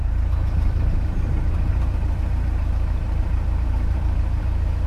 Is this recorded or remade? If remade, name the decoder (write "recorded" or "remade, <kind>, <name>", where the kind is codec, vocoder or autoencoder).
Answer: remade, vocoder, BigVGAN v2